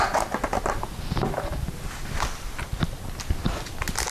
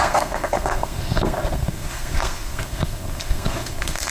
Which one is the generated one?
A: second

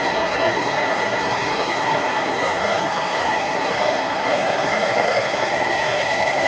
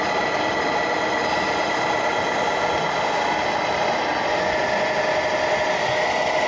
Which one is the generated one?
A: first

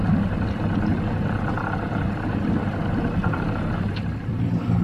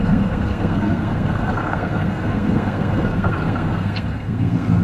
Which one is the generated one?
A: second